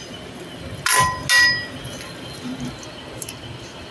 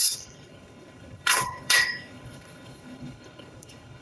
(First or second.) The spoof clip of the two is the second